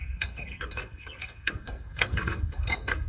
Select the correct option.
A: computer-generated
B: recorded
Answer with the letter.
A